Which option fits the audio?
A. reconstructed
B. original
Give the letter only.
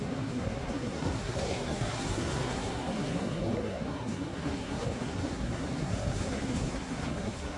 A